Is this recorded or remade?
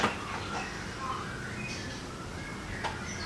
recorded